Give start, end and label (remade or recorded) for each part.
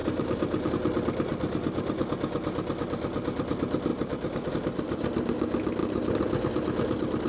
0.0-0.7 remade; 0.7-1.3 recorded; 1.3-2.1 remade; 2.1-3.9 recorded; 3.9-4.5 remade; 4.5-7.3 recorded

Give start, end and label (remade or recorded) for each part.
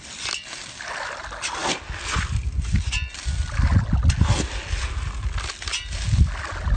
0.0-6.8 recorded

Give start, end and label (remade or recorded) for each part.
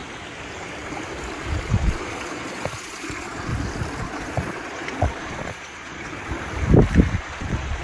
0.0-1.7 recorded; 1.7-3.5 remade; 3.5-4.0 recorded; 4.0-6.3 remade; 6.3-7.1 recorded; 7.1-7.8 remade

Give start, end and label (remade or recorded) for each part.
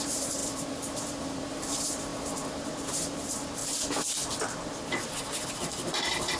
0.0-3.6 remade; 3.6-5.5 recorded; 5.5-6.4 remade